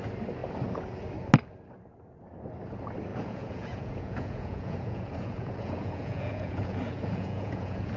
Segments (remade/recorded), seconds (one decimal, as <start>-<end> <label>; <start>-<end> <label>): 0.0-3.1 recorded; 3.1-8.0 remade